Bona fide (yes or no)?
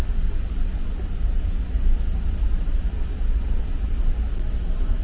yes